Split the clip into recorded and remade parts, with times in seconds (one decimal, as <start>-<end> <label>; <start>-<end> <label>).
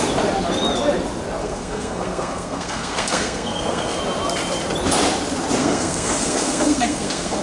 0.0-1.4 recorded; 1.4-4.0 remade; 4.0-5.6 recorded; 5.6-7.4 remade